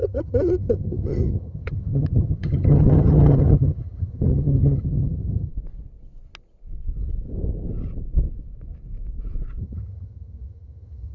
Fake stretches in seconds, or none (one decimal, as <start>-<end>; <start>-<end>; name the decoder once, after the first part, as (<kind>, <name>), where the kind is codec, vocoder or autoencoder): 0.0-5.5 (vocoder, HiFi-GAN); 9.6-11.1